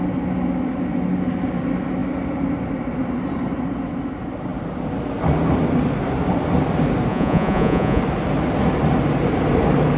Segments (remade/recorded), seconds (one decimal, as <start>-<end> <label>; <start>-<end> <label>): 0.0-7.1 recorded; 7.1-8.0 remade; 8.0-10.0 recorded